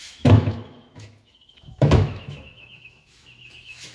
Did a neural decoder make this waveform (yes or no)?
yes